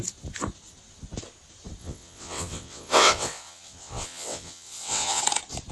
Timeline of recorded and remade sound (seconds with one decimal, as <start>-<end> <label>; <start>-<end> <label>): 0.0-1.8 recorded; 1.8-5.2 remade; 5.2-5.7 recorded